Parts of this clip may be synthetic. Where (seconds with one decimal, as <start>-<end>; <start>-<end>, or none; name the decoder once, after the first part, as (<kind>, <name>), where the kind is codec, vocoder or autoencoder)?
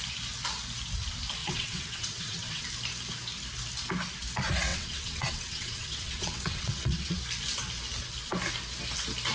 1.4-2.6 (vocoder, WaveNeXt); 4.7-7.2